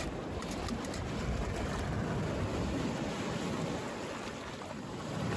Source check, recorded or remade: recorded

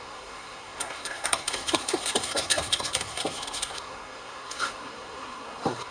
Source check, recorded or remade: remade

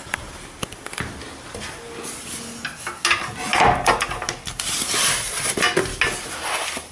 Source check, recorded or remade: recorded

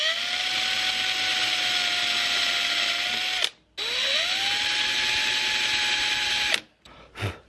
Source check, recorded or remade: recorded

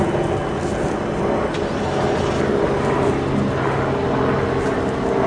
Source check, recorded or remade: recorded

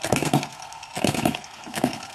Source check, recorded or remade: remade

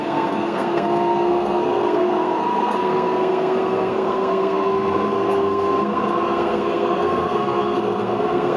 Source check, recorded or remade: remade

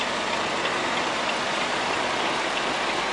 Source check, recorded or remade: recorded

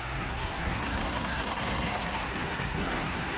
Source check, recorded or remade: remade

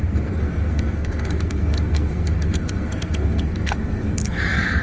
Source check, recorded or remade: remade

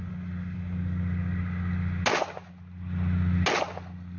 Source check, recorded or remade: recorded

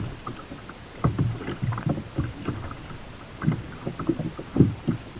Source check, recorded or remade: recorded